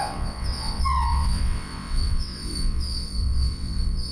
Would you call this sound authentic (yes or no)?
no